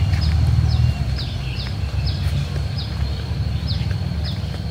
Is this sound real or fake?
real